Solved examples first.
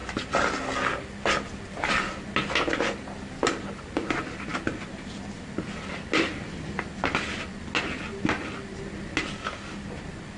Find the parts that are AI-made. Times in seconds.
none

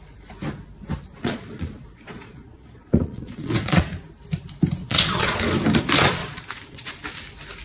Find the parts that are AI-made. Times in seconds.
1.1-3.9; 4.8-5.4; 6.2-6.9

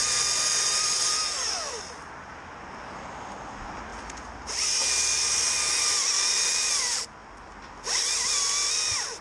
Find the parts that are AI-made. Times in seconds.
none

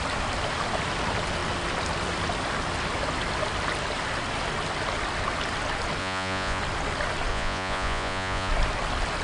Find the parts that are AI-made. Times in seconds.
6.0-6.6; 7.3-8.5

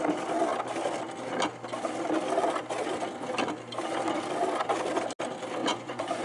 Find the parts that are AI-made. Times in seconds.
5.6-6.2

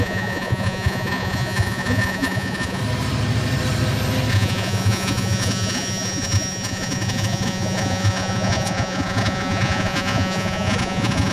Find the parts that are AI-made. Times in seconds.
0.0-2.8; 4.3-11.3

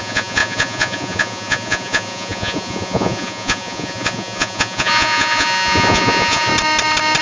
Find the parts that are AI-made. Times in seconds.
0.0-6.5

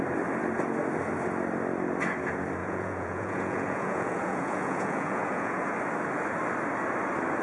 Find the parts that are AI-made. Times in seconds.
2.6-5.7